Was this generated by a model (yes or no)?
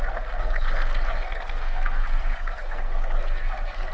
yes